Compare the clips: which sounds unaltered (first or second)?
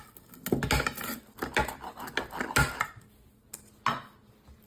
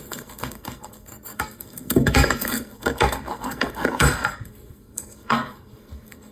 first